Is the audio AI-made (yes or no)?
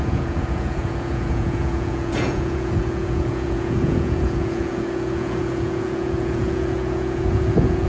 yes